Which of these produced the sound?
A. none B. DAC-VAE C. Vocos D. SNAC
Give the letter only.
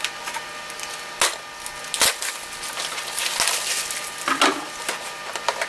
A